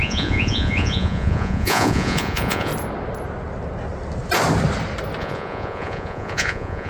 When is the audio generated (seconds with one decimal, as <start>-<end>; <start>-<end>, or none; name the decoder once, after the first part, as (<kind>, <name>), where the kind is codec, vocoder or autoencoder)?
0.0-2.7 (vocoder, Vocos); 5.2-6.9